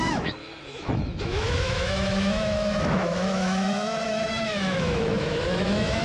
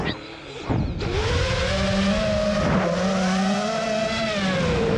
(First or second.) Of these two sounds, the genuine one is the second